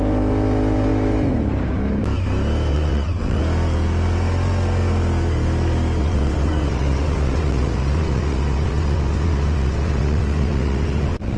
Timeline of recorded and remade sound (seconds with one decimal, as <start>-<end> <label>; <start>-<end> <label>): 0.0-2.7 recorded; 2.7-3.4 remade; 3.4-6.0 recorded; 6.0-11.4 remade